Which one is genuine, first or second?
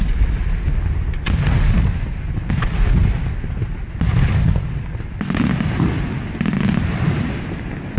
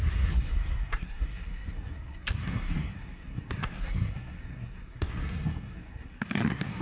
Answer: first